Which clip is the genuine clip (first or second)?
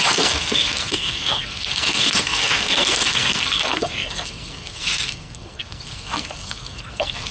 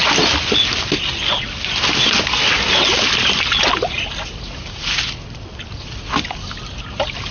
second